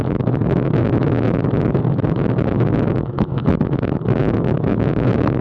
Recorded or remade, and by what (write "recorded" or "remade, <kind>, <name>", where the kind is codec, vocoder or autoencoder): remade, autoencoder, DAC-VAE